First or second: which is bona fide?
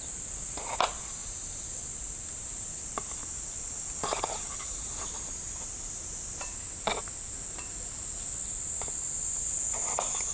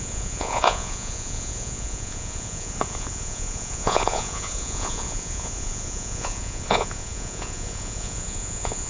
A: first